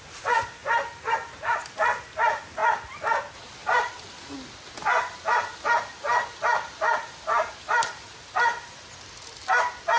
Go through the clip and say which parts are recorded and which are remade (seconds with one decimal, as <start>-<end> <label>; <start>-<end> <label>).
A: 0.0-10.0 recorded